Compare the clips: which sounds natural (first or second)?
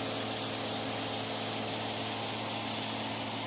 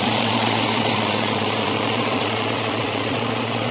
first